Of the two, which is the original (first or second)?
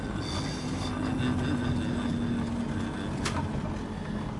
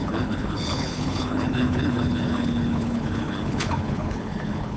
first